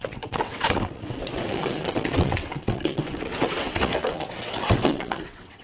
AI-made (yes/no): yes